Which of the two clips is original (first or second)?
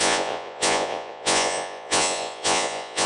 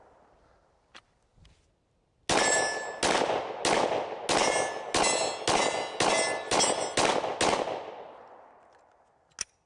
second